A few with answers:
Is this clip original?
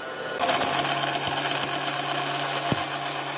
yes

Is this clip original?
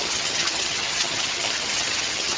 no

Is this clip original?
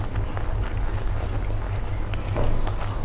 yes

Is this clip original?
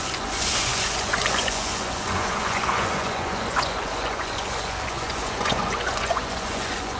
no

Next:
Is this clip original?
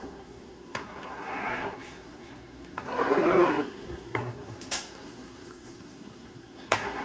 no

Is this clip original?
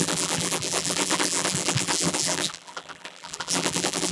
no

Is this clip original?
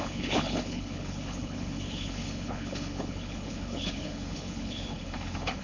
no